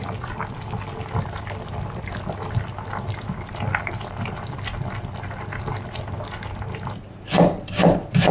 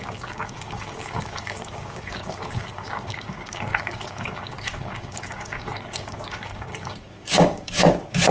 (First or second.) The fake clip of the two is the second